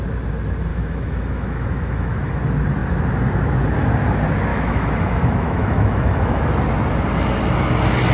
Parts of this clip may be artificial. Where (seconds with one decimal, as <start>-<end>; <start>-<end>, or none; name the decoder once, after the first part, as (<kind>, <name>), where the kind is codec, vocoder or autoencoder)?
0.7-2.4 (autoencoder, DAC-VAE); 4.5-6.4